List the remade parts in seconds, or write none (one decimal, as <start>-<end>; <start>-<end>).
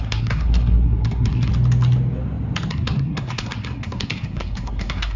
0.0-1.5; 2.7-5.2